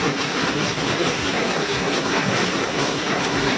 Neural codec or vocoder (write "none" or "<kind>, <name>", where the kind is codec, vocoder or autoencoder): codec, SNAC